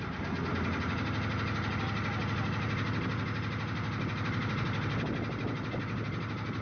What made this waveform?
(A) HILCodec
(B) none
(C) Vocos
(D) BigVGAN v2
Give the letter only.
B